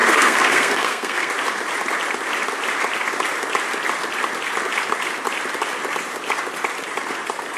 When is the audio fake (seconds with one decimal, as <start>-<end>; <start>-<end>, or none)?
0.0-1.3